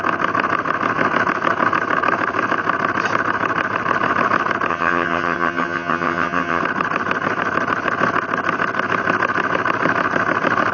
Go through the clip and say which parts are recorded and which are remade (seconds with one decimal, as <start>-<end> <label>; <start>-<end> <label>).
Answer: 0.0-4.7 recorded; 4.7-6.6 remade; 6.6-10.7 recorded